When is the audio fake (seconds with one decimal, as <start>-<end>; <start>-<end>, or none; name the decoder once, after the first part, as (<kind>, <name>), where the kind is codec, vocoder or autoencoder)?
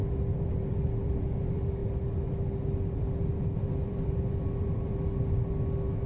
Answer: 0.0-1.8 (vocoder, BigVGAN v2); 3.4-4.9